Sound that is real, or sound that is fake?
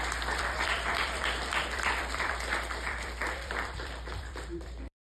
fake